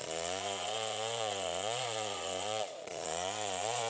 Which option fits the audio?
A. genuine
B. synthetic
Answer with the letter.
B